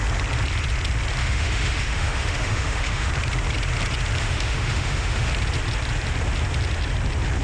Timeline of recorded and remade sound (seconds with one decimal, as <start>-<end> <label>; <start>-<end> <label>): 0.0-1.2 recorded; 1.2-3.1 remade; 3.1-4.2 recorded; 4.2-5.3 remade; 5.3-7.4 recorded